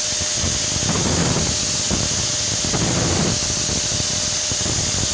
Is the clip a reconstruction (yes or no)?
no